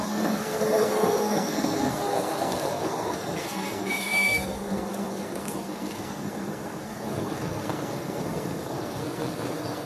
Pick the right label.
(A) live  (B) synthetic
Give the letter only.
B